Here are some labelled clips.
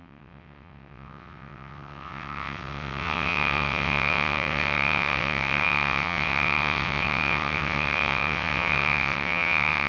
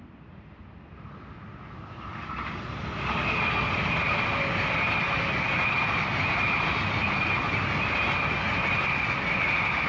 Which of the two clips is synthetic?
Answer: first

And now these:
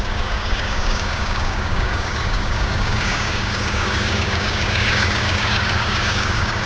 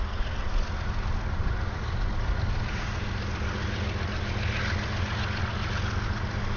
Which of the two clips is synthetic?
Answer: first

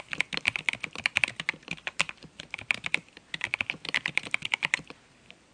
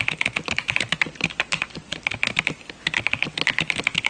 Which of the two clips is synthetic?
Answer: first